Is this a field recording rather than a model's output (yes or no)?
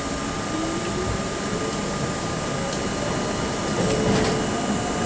yes